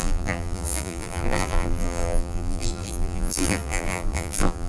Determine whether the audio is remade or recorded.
remade